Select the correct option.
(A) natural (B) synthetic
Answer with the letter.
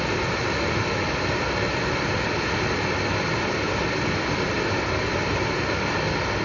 A